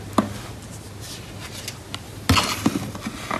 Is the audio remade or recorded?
recorded